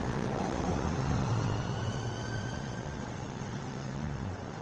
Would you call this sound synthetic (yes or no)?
yes